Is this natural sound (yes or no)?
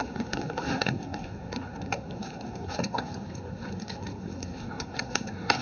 no